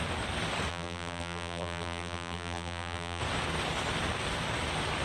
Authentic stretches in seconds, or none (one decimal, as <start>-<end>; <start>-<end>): 0.0-0.7; 3.2-5.0